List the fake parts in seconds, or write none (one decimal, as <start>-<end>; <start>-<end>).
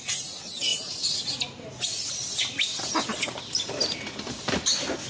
none